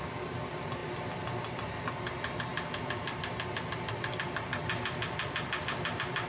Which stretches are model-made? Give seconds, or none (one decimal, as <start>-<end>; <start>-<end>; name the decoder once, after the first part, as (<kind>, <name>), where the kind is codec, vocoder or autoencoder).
none